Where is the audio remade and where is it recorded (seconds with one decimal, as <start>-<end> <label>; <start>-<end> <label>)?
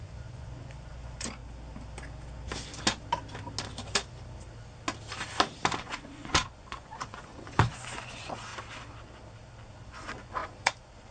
0.0-1.4 remade; 1.4-5.8 recorded; 5.8-8.5 remade; 8.5-9.7 recorded; 9.7-11.1 remade